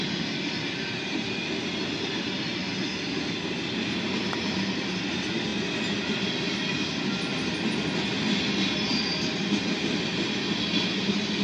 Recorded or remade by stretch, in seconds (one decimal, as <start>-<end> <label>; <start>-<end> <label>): 0.0-11.4 recorded